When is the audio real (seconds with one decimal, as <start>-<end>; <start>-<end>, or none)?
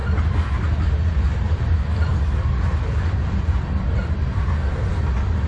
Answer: 0.0-1.1; 4.0-5.5